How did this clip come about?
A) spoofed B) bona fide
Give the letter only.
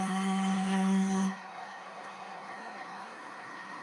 A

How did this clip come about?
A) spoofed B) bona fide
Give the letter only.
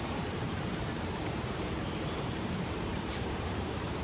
A